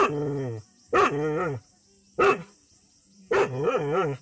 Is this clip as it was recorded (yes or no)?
yes